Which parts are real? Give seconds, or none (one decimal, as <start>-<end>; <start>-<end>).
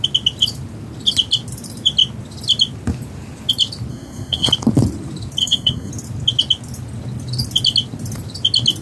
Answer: 0.0-3.9; 4.5-5.4; 5.9-8.8